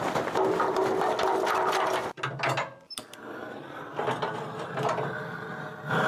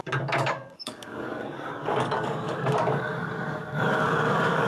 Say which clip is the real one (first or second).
first